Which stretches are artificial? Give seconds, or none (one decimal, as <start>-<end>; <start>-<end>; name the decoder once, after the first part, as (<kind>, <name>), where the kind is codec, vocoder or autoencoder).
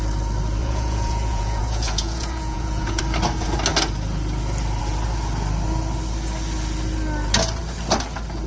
0.6-3.0 (vocoder, Vocos)